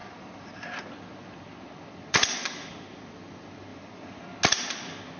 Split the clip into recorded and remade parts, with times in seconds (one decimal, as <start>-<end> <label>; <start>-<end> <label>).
0.0-3.1 remade; 3.1-3.7 recorded; 3.7-4.2 remade; 4.2-5.2 recorded